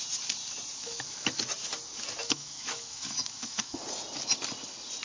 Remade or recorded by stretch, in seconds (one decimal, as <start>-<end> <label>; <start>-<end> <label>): 0.0-0.7 recorded; 0.7-1.4 remade; 1.4-2.2 recorded; 2.2-3.8 remade; 3.8-5.0 recorded